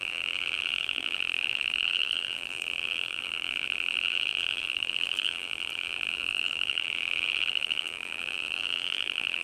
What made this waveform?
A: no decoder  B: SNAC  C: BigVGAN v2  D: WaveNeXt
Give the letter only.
C